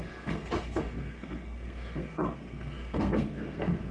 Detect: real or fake fake